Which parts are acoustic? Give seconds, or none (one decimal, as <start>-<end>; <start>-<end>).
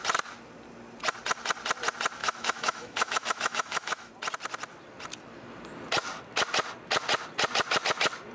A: 0.0-2.2; 4.1-8.3